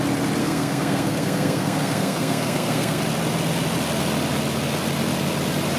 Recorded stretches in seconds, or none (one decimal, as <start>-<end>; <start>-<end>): 0.0-0.4; 3.0-5.8